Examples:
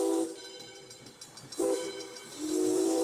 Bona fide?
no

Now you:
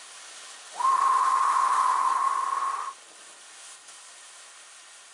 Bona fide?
yes